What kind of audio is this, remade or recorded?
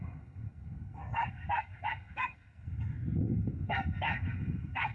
remade